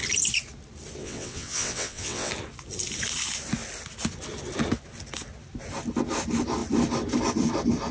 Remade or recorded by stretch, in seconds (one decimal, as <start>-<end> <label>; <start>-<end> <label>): 0.0-1.0 recorded; 1.0-2.3 remade; 2.3-7.9 recorded